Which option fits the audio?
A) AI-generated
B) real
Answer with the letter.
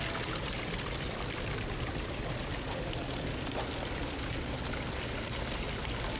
B